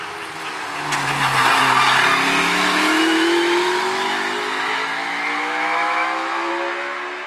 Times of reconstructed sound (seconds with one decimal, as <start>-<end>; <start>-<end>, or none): 2.4-6.5